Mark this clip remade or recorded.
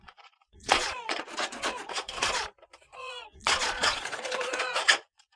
remade